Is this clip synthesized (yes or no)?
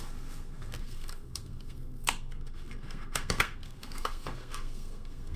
yes